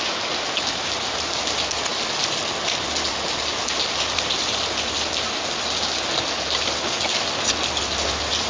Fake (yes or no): no